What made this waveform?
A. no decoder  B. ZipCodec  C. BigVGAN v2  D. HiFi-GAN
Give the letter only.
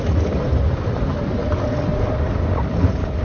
A